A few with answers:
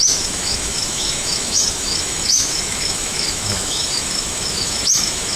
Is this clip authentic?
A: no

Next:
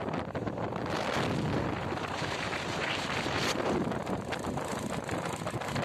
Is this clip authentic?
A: yes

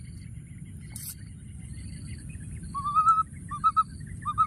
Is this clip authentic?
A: yes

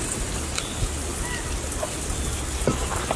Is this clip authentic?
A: yes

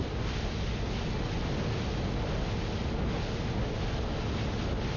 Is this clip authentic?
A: yes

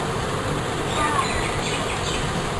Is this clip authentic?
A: yes